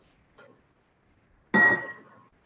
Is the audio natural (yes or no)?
yes